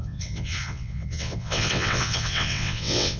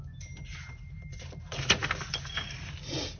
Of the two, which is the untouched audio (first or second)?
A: second